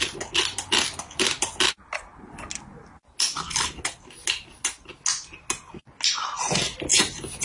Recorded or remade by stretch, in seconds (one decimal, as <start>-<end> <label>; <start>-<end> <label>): 0.0-7.4 recorded